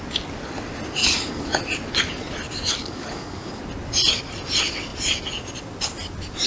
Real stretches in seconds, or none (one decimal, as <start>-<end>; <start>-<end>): 0.0-1.0; 1.6-2.8; 3.6-6.5